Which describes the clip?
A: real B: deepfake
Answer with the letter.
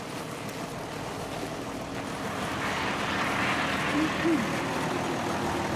A